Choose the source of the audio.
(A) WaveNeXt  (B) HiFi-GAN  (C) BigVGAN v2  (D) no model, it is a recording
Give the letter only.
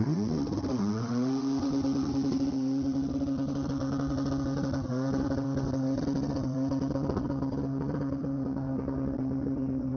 A